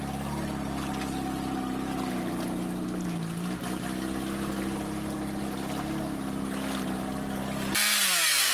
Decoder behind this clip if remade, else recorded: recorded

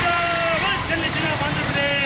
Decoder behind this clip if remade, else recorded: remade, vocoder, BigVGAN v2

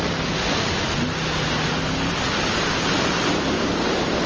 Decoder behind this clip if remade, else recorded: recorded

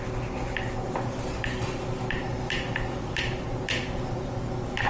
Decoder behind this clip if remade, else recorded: recorded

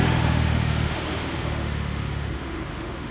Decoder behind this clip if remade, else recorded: remade, autoencoder, DAC-VAE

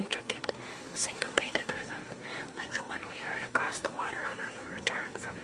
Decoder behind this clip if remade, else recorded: remade, codec, SNAC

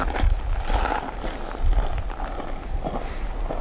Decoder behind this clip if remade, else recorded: recorded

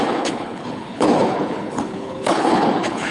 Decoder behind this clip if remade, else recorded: remade, codec, HILCodec